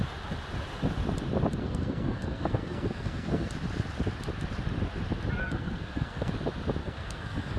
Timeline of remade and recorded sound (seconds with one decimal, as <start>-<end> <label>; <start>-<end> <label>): 0.0-1.6 recorded; 1.6-3.5 remade; 3.5-5.4 recorded; 5.4-6.3 remade; 6.3-6.8 recorded; 6.8-7.6 remade